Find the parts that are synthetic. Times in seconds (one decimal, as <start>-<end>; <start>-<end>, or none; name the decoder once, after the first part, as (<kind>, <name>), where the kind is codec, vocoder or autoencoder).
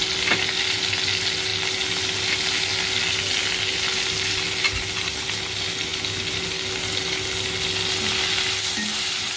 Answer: none